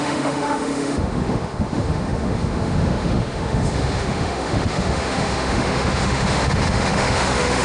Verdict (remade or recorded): remade